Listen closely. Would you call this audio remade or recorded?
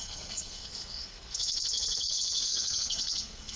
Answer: remade